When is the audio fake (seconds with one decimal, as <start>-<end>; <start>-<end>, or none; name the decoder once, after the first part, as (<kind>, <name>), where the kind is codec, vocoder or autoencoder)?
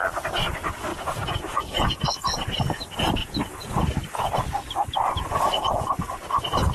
0.9-2.0 (vocoder, Vocos); 3.2-3.8